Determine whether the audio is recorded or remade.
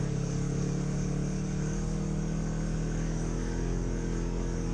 remade